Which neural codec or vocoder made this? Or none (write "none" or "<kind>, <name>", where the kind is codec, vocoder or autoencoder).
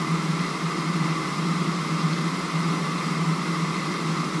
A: none